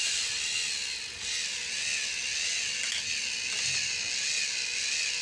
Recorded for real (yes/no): yes